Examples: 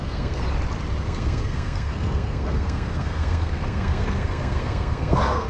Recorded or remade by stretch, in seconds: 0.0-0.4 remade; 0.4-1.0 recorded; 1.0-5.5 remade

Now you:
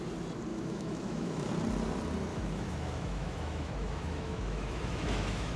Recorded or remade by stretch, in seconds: 0.0-0.5 recorded; 0.5-1.5 remade; 1.5-2.3 recorded; 2.3-5.6 remade

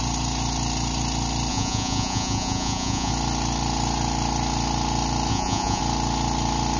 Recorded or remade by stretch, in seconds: 0.0-1.5 recorded; 1.5-3.1 remade; 3.1-5.3 recorded; 5.3-5.8 remade; 5.8-6.8 recorded

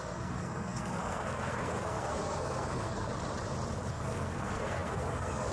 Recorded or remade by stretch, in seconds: 0.0-3.1 remade; 3.1-3.9 recorded; 3.9-5.5 remade